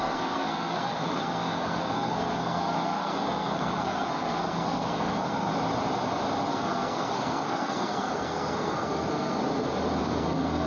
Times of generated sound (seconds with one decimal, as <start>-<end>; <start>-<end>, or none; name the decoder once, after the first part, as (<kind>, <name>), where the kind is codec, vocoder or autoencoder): 0.0-5.5 (codec, SNAC); 6.5-9.4; 10.0-10.7